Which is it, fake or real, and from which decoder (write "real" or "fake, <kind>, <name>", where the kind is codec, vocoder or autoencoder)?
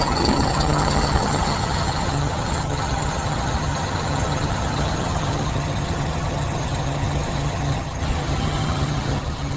fake, vocoder, HiFi-GAN